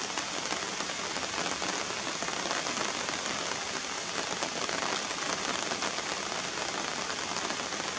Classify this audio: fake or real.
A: real